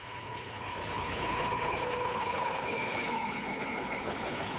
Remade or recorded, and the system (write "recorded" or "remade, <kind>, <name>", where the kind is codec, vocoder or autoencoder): remade, codec, HILCodec